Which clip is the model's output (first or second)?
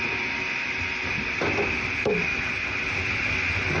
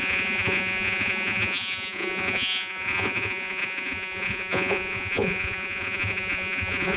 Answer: second